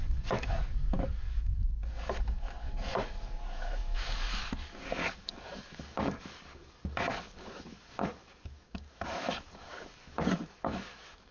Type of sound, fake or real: fake